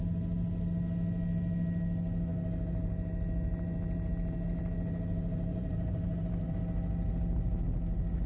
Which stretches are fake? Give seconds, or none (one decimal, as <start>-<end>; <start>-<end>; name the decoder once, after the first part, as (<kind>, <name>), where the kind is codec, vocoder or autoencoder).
5.5-6.6 (vocoder, BigVGAN v2)